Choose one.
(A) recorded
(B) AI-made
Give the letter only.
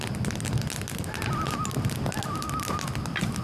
A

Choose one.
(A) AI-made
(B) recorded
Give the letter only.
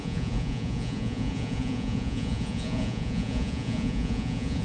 A